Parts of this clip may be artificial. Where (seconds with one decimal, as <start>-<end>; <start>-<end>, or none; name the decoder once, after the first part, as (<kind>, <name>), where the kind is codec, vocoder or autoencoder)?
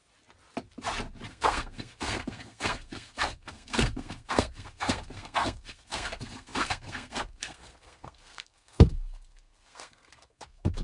1.3-10.8 (codec, SNAC)